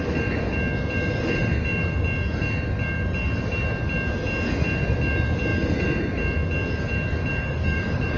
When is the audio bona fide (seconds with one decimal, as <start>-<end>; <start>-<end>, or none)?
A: 0.0-7.3